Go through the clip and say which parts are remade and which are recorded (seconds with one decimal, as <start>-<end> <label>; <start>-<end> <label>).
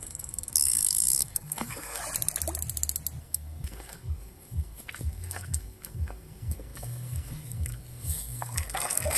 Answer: 0.0-2.0 remade; 2.0-3.2 recorded; 3.2-9.2 remade